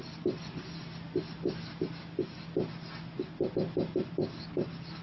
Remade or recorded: recorded